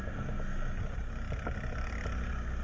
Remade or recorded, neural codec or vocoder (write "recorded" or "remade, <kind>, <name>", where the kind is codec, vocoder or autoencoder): recorded